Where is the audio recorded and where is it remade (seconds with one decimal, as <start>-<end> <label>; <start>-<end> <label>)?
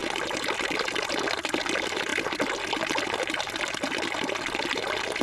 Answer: 0.0-1.6 remade; 1.6-5.2 recorded